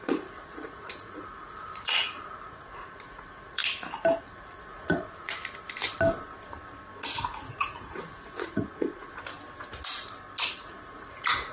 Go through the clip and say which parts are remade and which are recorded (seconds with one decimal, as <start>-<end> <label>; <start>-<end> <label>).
0.0-3.6 remade; 3.6-4.2 recorded; 4.2-5.4 remade; 5.4-7.2 recorded; 7.2-9.1 remade; 9.1-10.6 recorded; 10.6-11.5 remade